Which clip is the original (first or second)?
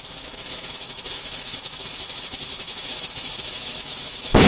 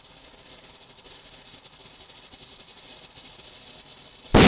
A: second